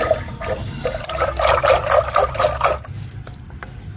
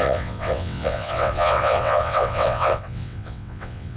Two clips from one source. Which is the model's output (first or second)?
second